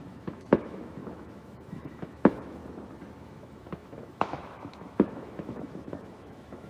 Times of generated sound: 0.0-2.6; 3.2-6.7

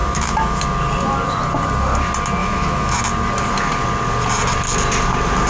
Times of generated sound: 0.0-0.6; 2.4-3.0